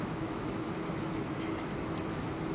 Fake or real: fake